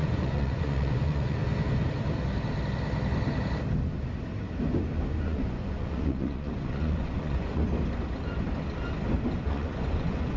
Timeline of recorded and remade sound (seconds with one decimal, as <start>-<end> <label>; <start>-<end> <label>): 0.0-1.4 remade; 1.4-5.2 recorded; 5.2-7.6 remade; 7.6-9.5 recorded; 9.5-10.4 remade